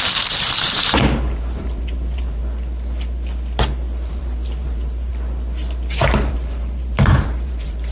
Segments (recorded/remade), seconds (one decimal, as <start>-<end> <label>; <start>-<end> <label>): 0.0-2.4 remade; 2.4-4.1 recorded; 4.1-5.1 remade; 5.1-6.3 recorded; 6.3-7.9 remade